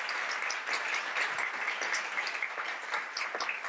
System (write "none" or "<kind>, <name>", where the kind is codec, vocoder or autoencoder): none